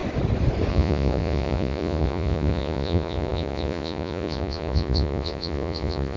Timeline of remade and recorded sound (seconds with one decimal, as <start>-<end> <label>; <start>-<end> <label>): 0.0-0.7 recorded; 0.7-6.2 remade